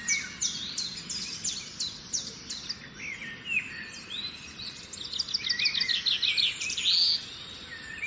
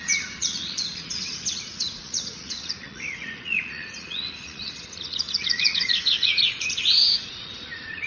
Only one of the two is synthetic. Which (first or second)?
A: second